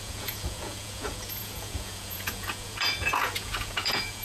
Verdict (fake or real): fake